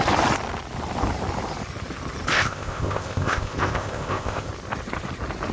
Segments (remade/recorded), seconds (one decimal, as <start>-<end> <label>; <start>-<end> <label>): 0.0-2.3 recorded; 2.3-4.5 remade; 4.5-5.5 recorded